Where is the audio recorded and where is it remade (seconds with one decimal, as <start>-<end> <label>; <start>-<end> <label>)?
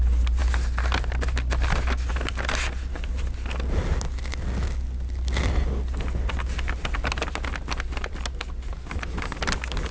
0.0-9.9 recorded